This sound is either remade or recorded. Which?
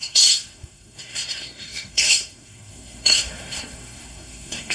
remade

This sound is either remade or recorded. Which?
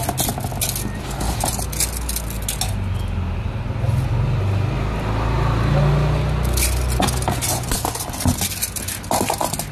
recorded